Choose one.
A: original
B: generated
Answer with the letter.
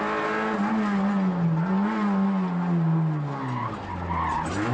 A